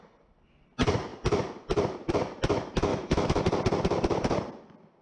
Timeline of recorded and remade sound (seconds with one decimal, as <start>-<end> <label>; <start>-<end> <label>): 0.0-2.9 recorded; 2.9-3.4 remade; 3.4-5.0 recorded

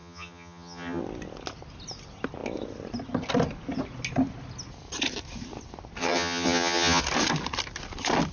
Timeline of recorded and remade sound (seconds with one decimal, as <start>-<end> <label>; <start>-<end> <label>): 0.0-1.0 remade; 1.0-6.0 recorded; 6.0-7.0 remade; 7.0-8.3 recorded

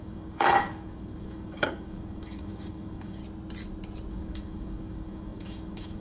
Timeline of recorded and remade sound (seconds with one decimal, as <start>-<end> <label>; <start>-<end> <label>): 0.0-3.2 remade; 3.2-4.1 recorded; 4.1-6.0 remade

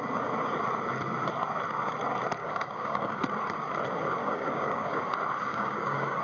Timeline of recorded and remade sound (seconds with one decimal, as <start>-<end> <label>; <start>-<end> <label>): 0.0-2.4 recorded; 2.4-3.2 remade; 3.2-4.2 recorded; 4.2-5.0 remade; 5.0-5.5 recorded; 5.5-6.2 remade

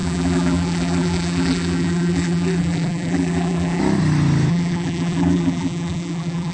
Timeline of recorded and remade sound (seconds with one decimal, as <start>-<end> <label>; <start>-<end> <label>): 0.0-3.8 remade; 3.8-4.5 recorded; 4.5-6.5 remade

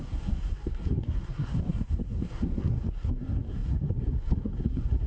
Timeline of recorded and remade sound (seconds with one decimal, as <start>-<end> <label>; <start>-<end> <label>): 0.0-5.1 remade

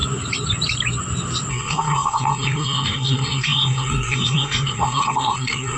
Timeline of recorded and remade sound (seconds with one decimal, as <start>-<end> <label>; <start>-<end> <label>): 0.0-1.5 recorded; 1.5-5.8 remade

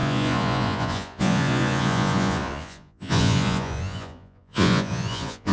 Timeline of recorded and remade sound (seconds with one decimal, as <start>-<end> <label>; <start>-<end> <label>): 0.0-5.5 remade